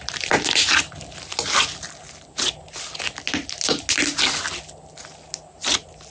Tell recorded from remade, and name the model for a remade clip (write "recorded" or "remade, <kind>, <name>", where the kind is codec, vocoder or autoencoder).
recorded